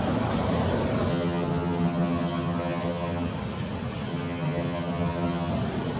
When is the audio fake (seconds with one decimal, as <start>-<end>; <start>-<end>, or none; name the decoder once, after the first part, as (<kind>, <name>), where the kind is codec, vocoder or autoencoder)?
1.1-3.3 (vocoder, HiFi-GAN); 4.1-5.5